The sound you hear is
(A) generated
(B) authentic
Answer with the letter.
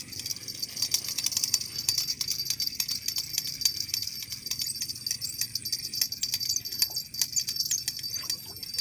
B